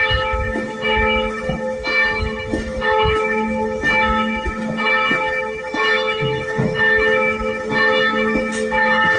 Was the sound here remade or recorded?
remade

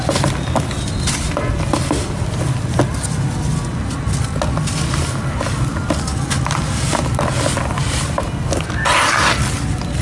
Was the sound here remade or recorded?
recorded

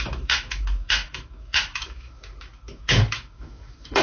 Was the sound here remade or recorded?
remade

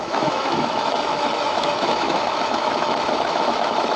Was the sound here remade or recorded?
remade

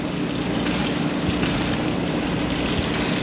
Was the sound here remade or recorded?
recorded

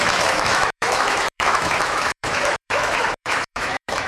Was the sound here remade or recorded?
remade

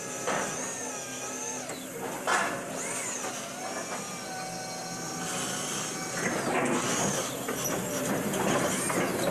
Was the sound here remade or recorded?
recorded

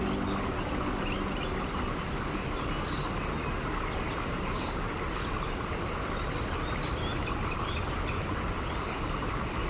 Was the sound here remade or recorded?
recorded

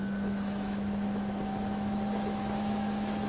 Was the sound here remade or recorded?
remade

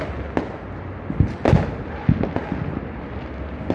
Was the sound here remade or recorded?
recorded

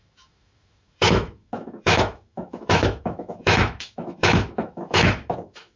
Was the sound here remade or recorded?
remade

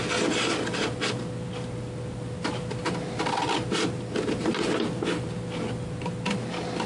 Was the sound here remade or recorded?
recorded